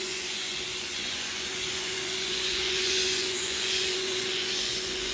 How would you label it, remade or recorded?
remade